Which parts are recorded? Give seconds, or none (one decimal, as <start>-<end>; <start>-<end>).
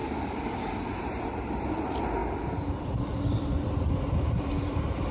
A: 0.0-5.1